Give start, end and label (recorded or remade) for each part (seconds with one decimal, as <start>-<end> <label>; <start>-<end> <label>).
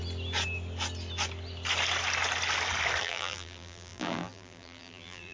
0.0-3.0 recorded; 3.0-5.3 remade